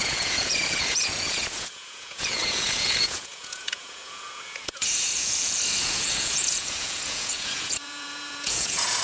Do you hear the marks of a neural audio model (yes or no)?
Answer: yes